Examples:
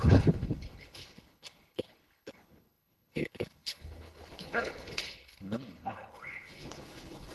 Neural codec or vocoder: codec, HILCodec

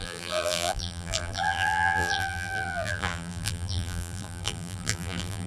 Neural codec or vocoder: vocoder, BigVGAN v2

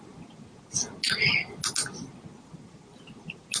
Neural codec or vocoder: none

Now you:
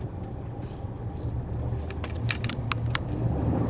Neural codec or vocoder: none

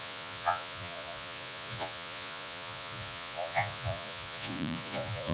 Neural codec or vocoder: vocoder, Vocos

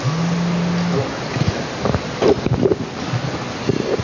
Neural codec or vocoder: none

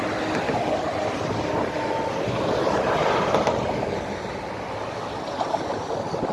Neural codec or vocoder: none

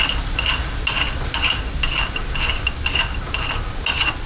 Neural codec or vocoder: none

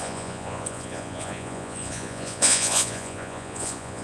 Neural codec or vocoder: vocoder, Vocos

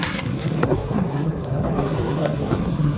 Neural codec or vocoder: codec, SNAC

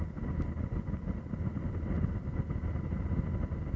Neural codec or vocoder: none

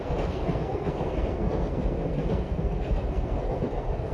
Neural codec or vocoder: codec, SNAC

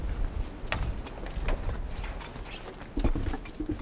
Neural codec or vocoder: none